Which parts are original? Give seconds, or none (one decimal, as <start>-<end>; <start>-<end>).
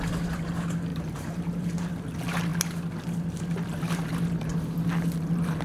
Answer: 0.0-0.9; 2.0-5.6